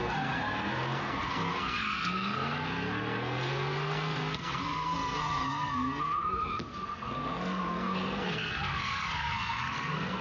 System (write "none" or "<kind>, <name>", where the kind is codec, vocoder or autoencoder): codec, SNAC